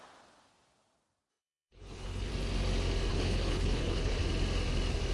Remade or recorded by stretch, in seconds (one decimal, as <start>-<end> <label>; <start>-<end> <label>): 0.0-1.3 recorded; 1.3-2.3 remade; 2.3-3.1 recorded; 3.1-4.2 remade; 4.2-5.1 recorded